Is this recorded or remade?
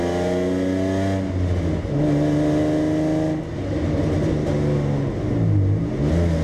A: recorded